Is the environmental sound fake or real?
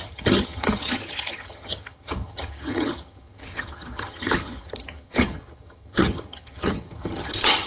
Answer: fake